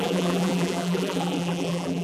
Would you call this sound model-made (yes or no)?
yes